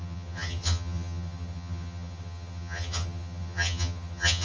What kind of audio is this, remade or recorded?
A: remade